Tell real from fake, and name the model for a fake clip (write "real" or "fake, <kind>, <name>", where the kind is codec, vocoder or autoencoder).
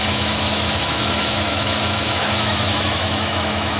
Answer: fake, autoencoder, DAC-VAE